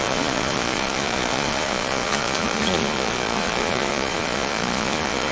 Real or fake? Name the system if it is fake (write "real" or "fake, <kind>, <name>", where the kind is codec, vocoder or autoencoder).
fake, vocoder, Vocos